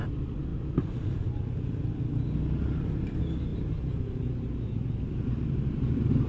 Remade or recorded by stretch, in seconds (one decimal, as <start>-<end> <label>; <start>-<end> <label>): 0.0-6.3 recorded